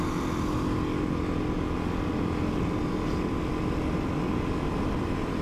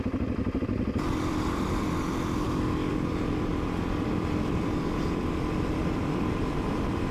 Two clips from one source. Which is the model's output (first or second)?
second